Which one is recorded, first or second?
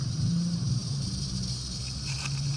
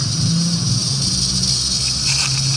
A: second